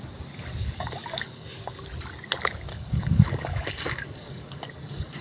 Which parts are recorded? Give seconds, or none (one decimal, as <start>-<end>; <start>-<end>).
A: 0.0-0.6; 1.8-2.7